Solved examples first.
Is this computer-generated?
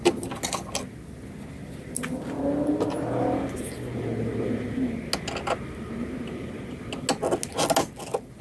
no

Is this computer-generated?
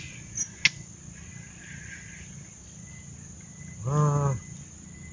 no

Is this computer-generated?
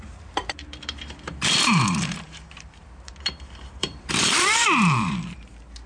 yes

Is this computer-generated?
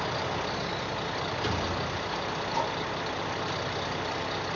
no